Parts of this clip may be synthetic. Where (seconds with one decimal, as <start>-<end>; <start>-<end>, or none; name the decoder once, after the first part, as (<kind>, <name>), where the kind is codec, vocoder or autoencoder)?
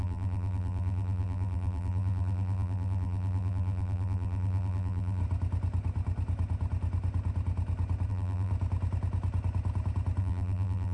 0.0-5.2 (vocoder, BigVGAN v2); 8.1-8.5; 10.2-10.9